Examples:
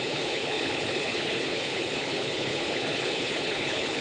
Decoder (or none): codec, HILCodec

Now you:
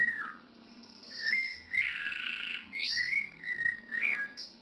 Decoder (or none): codec, SNAC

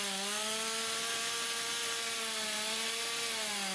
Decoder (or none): none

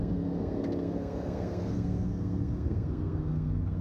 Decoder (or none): codec, SNAC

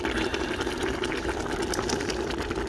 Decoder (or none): none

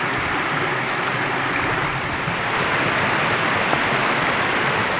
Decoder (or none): none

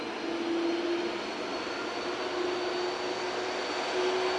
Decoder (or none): none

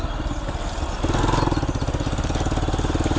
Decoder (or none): none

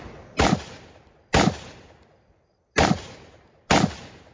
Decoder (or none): none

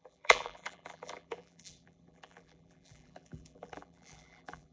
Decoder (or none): vocoder, BigVGAN v2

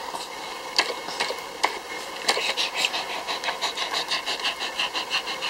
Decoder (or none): none